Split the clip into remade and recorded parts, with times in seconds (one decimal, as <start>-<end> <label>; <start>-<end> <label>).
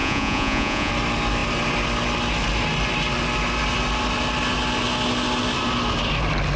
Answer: 0.0-0.9 remade; 0.9-6.6 recorded